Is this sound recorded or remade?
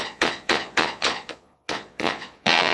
remade